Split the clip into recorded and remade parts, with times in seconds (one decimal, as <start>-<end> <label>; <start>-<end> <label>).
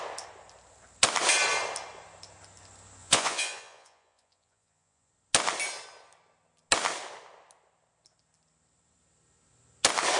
0.0-3.0 recorded; 3.0-5.1 remade; 5.1-10.2 recorded